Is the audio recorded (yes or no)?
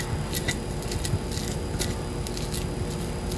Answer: yes